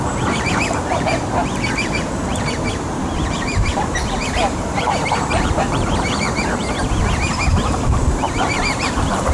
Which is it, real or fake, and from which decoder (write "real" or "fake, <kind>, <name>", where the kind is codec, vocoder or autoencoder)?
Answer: fake, vocoder, BigVGAN v2